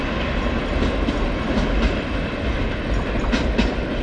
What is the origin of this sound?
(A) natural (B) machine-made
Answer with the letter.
A